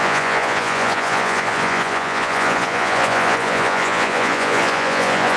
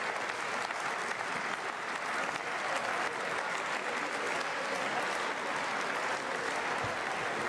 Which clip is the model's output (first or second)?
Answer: first